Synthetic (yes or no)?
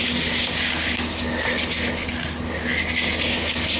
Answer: yes